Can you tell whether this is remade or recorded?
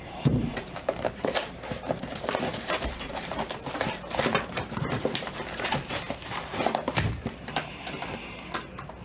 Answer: remade